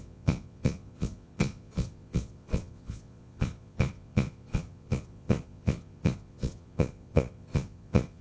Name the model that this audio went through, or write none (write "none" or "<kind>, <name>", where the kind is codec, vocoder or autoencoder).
vocoder, Vocos